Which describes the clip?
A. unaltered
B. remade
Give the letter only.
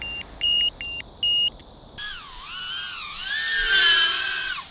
A